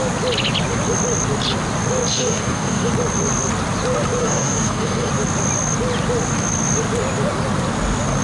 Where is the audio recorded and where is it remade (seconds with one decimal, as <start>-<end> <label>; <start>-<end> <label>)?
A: 0.0-2.1 recorded; 2.1-2.9 remade; 2.9-4.2 recorded; 4.2-5.1 remade; 5.1-8.2 recorded